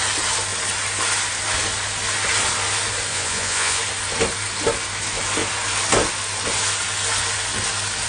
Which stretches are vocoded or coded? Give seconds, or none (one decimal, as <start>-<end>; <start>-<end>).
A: 3.1-3.8